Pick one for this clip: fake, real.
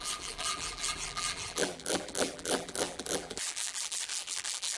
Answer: fake